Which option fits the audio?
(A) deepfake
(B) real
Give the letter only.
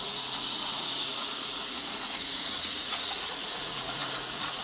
A